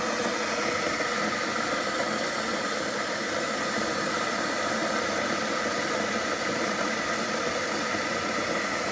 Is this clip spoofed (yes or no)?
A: yes